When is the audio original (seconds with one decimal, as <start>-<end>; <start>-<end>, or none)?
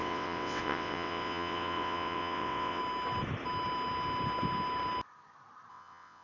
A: 2.8-5.7